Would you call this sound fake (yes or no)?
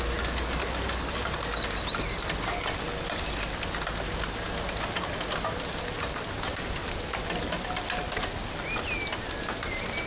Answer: no